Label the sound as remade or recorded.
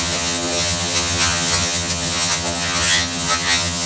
remade